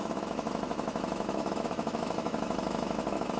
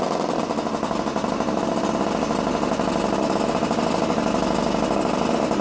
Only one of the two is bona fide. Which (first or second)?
second